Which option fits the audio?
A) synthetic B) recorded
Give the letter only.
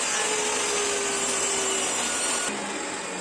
B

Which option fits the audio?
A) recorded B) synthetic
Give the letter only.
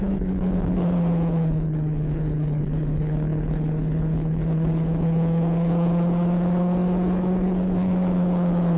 B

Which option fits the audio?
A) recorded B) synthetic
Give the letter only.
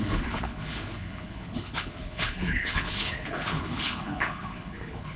B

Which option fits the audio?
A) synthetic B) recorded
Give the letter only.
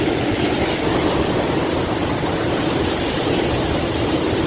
B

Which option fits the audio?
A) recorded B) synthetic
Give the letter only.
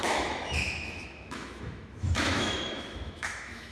B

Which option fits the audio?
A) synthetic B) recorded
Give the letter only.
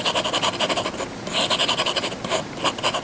B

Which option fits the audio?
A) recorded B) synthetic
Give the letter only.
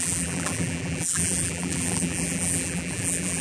B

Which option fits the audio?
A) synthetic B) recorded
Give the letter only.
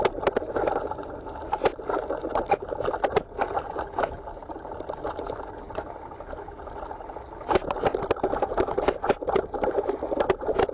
B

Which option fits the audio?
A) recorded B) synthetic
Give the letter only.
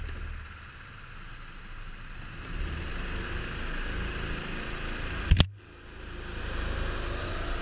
A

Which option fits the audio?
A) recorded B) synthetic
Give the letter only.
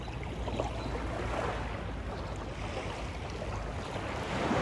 A